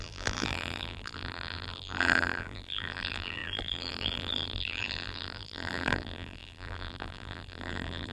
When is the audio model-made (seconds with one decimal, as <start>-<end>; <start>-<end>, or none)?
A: 0.0-8.1